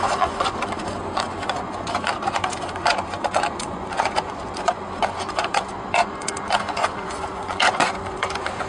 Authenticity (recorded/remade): remade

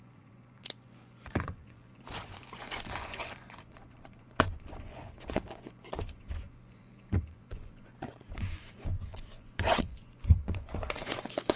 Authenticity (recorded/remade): remade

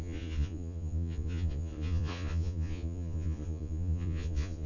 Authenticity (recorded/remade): remade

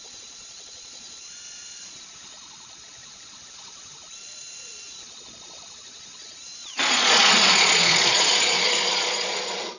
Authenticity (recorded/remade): remade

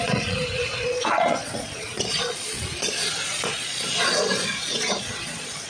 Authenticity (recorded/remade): remade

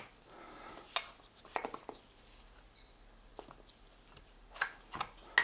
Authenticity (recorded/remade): recorded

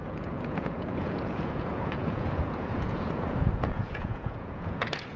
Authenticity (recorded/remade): remade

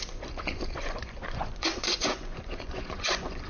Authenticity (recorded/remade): remade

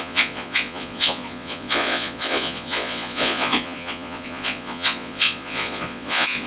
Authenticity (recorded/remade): remade